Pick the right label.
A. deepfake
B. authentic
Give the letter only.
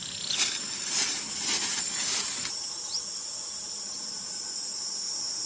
B